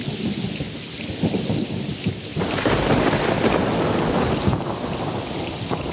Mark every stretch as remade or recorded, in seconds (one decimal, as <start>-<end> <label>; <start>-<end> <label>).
0.0-5.9 recorded